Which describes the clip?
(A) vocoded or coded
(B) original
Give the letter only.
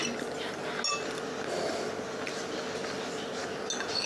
B